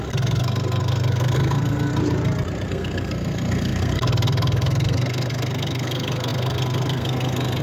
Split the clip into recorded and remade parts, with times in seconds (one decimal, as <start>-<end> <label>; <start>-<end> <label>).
0.0-1.9 remade; 1.9-2.7 recorded; 2.7-7.6 remade